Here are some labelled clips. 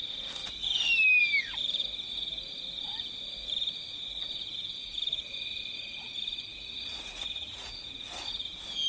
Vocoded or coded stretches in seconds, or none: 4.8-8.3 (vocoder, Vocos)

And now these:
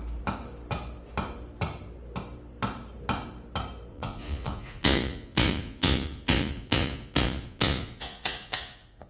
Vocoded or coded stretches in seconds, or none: 3.9-9.1 (vocoder, Vocos)

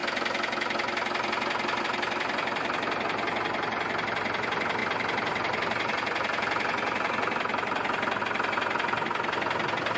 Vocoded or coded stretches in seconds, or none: 1.8-10.0 (vocoder, BigVGAN v2)

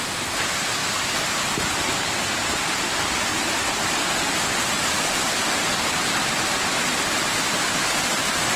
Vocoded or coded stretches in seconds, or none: 0.0-0.8 (vocoder, BigVGAN v2); 2.5-3.3

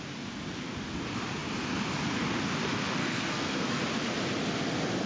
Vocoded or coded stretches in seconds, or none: 3.0-3.8 (codec, SNAC)

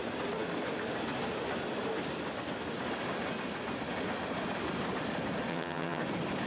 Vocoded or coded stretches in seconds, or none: 5.5-6.0 (vocoder, HiFi-GAN)

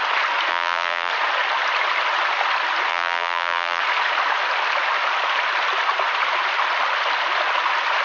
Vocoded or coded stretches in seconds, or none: 0.5-1.1 (vocoder, BigVGAN v2); 2.9-3.8

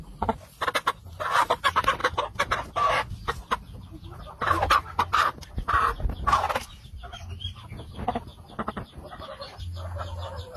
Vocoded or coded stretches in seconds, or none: none